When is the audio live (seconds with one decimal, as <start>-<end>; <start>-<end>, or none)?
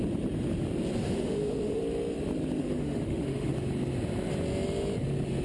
0.0-1.0; 1.8-2.6; 3.5-5.4